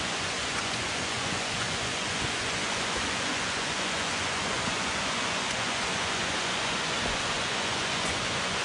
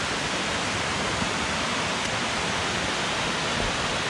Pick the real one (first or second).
second